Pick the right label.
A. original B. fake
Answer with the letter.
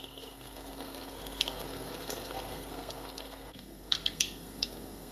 B